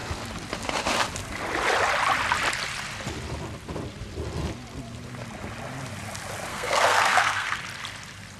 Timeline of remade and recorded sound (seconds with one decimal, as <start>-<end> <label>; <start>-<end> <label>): 0.0-6.5 recorded; 6.5-7.6 remade; 7.6-8.4 recorded